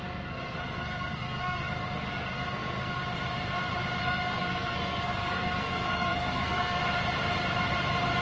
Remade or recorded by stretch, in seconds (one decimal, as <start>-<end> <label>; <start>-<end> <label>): 0.0-3.0 remade; 3.0-4.0 recorded; 4.0-6.8 remade; 6.8-8.2 recorded